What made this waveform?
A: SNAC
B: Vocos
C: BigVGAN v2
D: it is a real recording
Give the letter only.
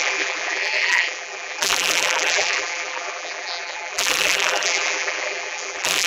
C